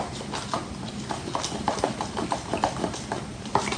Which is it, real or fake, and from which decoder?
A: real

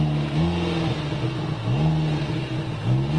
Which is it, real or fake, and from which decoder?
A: real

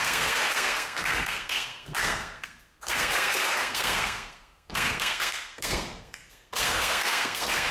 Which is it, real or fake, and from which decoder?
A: fake, codec, SNAC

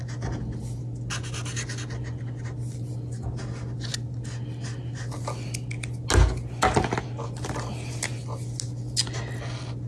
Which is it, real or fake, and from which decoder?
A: real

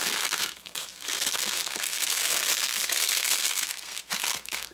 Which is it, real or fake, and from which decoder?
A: fake, codec, SNAC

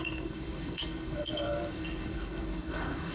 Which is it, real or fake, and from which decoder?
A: fake, codec, SNAC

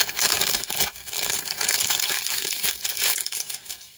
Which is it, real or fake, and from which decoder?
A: fake, codec, SNAC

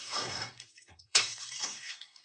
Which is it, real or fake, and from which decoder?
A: fake, codec, SNAC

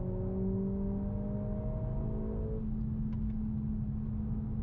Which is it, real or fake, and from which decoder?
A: real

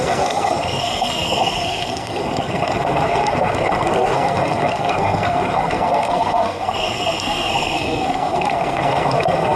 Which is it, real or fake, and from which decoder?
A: fake, codec, SNAC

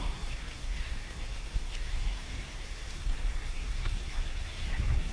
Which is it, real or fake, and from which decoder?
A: fake, codec, SNAC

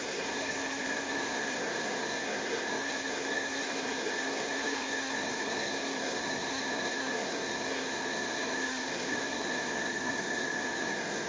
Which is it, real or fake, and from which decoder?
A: fake, codec, SNAC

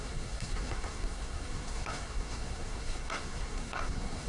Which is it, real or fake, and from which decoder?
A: fake, codec, SNAC